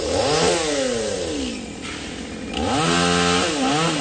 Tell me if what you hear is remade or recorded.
recorded